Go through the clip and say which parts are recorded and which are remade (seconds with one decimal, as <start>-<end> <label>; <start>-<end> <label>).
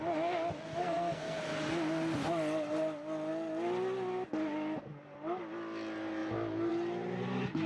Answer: 0.0-0.8 recorded; 0.8-1.4 remade; 1.4-7.7 recorded